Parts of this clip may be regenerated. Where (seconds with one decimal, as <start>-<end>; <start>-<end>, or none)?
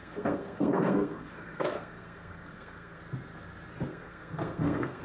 0.0-3.0; 3.9-5.0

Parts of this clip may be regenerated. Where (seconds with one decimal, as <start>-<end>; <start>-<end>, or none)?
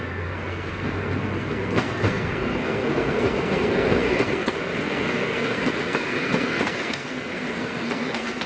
0.0-8.5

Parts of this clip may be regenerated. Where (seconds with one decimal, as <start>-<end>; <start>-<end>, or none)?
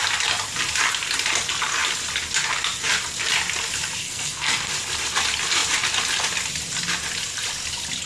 4.0-4.7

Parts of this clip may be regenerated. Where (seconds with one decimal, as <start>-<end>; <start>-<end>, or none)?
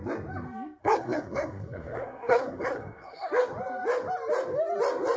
0.8-3.3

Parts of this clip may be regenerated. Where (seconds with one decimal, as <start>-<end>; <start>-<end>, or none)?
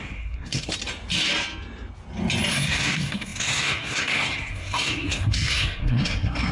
0.0-0.7; 2.5-6.5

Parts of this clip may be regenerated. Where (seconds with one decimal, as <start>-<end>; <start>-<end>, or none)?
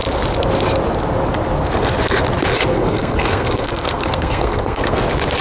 2.7-5.0